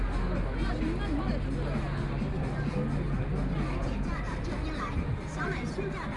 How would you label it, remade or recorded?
recorded